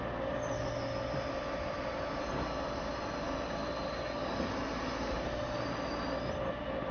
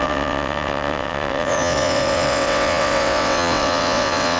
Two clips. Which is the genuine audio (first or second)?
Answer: first